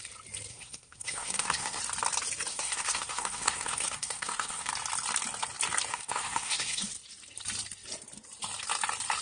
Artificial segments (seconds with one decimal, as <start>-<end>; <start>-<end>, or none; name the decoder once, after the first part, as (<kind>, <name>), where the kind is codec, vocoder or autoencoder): 0.5-1.8 (codec, SNAC); 2.5-4.7; 5.9-6.9